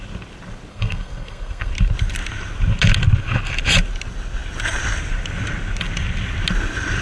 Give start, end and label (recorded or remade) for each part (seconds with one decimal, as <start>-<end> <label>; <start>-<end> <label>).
0.0-0.7 recorded; 0.7-1.7 remade; 1.7-7.0 recorded